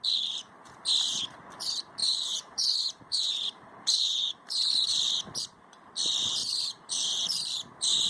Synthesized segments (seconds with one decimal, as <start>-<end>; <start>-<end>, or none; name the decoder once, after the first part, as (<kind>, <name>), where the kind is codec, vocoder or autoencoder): 2.0-5.0 (vocoder, BigVGAN v2); 6.4-6.9